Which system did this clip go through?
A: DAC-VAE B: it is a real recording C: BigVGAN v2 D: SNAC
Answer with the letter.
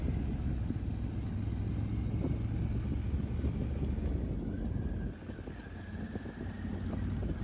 B